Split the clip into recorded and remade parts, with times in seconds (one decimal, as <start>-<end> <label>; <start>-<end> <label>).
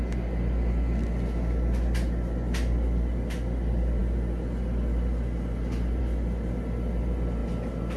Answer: 0.0-8.0 recorded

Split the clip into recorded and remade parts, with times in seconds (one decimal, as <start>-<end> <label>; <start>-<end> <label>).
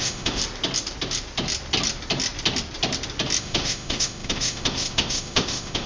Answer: 0.0-0.4 remade; 0.4-3.4 recorded; 3.4-5.9 remade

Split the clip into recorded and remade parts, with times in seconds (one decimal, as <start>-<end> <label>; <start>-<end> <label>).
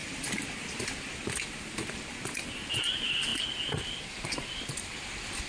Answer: 0.0-5.5 recorded